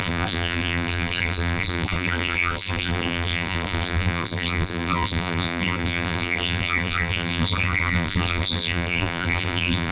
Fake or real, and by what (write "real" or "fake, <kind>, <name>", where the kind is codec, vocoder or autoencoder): fake, vocoder, BigVGAN v2